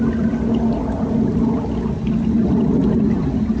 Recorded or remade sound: recorded